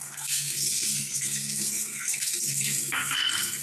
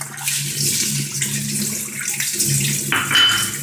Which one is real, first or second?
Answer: second